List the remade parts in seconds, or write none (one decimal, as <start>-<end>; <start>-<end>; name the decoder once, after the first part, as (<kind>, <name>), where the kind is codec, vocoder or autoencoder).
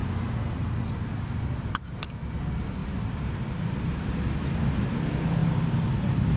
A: 0.0-0.8 (vocoder, BigVGAN v2); 2.8-4.2